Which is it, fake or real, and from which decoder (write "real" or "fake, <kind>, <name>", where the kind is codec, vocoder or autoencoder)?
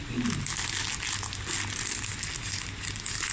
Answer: real